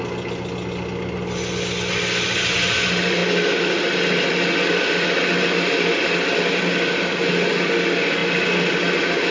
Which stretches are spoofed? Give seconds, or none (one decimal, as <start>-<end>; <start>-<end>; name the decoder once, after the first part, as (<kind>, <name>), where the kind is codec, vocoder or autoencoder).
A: none